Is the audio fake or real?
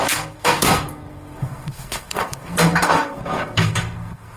fake